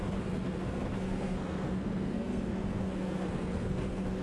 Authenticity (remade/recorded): remade